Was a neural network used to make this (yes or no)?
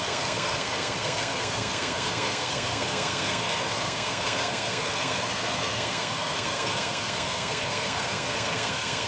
yes